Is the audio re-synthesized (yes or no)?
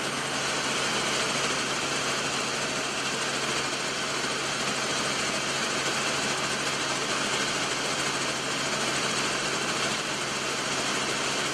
no